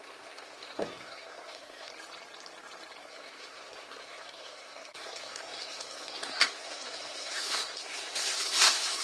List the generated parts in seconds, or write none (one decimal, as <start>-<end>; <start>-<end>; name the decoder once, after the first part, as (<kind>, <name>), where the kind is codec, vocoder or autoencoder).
0.0-1.9 (codec, SNAC); 3.0-9.0